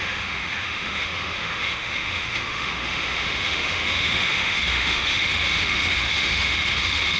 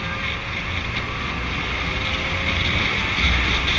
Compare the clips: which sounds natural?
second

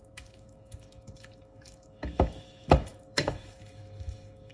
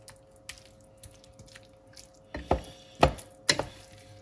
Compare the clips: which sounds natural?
second